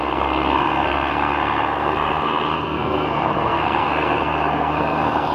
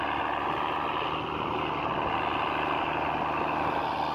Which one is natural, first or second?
second